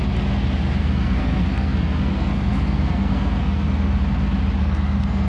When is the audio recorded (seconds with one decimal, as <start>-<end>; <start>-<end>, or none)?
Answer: 0.0-0.8; 4.0-4.6